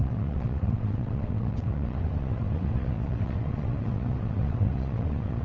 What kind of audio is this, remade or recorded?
remade